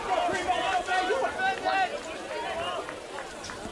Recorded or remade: recorded